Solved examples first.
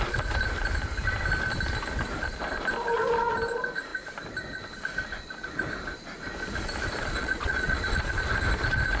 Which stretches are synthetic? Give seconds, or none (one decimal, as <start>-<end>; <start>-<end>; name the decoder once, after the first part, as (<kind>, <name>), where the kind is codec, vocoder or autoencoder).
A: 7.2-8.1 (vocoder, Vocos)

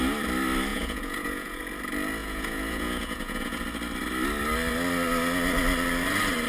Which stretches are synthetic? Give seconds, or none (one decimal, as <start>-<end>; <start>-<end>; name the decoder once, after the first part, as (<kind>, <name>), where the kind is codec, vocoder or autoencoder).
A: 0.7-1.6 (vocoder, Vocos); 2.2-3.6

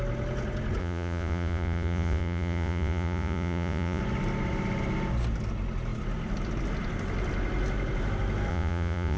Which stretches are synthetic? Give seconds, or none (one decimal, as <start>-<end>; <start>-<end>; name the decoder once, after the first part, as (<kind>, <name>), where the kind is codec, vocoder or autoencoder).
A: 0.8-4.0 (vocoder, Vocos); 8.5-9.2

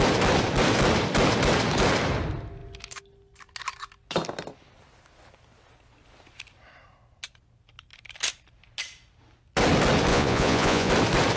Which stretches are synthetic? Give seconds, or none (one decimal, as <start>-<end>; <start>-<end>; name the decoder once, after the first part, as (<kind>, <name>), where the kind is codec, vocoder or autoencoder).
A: 10.1-10.9 (vocoder, Vocos)

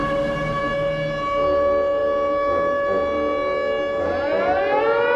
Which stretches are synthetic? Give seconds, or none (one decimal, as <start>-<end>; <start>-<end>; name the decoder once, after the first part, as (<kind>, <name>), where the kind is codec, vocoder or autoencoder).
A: none

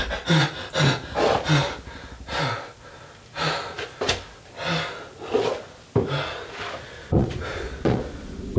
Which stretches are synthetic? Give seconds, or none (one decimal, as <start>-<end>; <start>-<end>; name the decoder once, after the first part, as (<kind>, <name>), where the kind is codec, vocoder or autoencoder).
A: 7.0-8.6 (vocoder, Vocos)

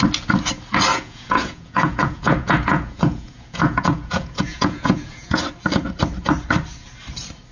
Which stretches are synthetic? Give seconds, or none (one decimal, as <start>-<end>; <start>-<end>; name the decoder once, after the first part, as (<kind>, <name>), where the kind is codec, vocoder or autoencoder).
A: 0.9-5.4 (vocoder, Vocos)

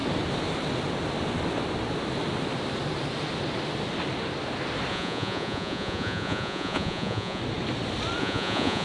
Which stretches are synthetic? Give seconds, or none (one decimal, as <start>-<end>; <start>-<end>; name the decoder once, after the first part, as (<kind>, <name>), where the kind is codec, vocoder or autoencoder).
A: 4.9-7.4 (vocoder, Vocos); 8.2-8.8